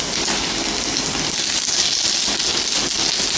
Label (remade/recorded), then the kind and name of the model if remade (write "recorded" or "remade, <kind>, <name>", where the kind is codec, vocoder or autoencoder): recorded